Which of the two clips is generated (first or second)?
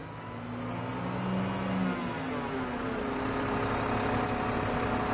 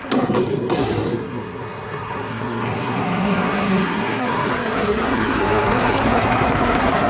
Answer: second